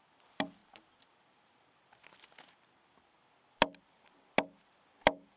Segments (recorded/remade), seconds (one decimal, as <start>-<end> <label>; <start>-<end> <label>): 0.0-5.4 recorded